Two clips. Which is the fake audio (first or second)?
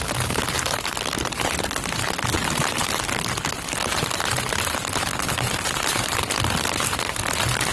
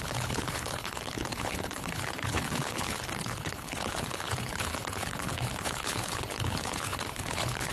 second